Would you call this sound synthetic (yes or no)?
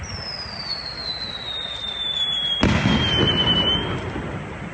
no